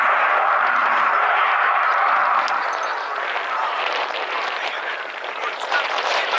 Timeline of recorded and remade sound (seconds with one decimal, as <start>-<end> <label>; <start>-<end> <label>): 0.0-2.2 remade; 2.2-3.5 recorded; 3.5-6.4 remade